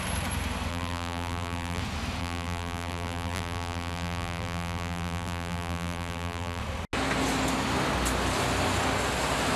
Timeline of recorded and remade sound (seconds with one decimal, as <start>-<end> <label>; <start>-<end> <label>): 0.0-0.7 recorded; 0.7-1.8 remade; 1.8-2.2 recorded; 2.2-6.6 remade; 6.6-9.6 recorded